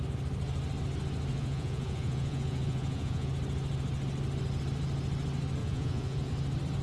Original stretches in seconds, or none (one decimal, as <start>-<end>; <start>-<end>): 0.0-1.3; 3.3-5.6; 6.3-6.8